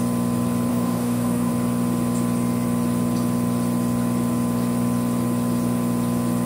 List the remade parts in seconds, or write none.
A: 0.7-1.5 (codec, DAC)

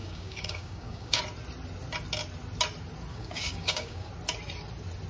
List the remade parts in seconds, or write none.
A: 0.0-1.2 (codec, DAC); 3.1-4.1

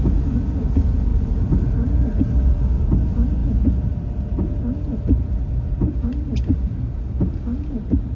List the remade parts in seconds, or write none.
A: none

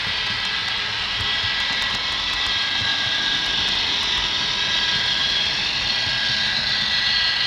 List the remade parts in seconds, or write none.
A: 0.6-2.3 (vocoder, BigVGAN v2); 2.9-3.9; 5.2-6.0

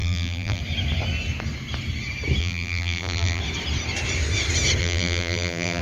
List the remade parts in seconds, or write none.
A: 0.0-0.6 (vocoder, BigVGAN v2); 2.4-3.4; 4.8-5.8